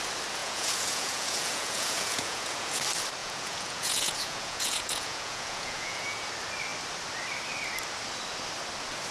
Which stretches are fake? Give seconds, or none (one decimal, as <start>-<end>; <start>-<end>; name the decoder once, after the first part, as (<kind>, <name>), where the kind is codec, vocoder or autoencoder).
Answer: 0.4-2.8 (vocoder, Vocos); 3.2-6.3